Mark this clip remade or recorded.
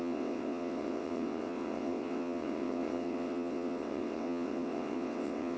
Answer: remade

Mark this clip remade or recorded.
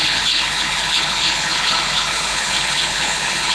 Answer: remade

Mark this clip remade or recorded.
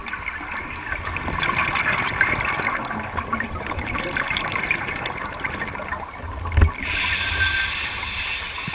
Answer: recorded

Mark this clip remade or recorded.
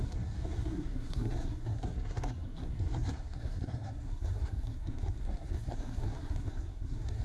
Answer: remade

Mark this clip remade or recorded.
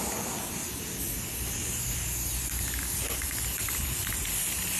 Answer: recorded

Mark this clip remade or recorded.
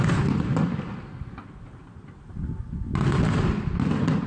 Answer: recorded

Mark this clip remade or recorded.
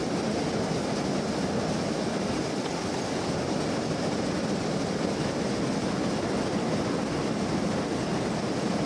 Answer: recorded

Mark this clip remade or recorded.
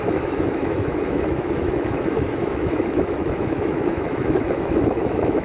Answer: remade